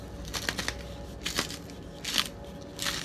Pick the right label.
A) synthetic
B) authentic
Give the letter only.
B